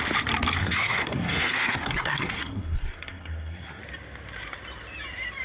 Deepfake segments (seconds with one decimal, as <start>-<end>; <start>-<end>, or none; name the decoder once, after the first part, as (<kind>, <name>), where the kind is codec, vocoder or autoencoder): 0.6-3.8 (codec, SNAC)